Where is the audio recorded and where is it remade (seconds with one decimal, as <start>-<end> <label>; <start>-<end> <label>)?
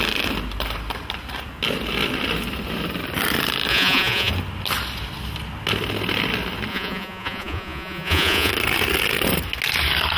0.0-3.7 recorded; 3.7-4.3 remade; 4.3-6.7 recorded; 6.7-8.5 remade; 8.5-10.2 recorded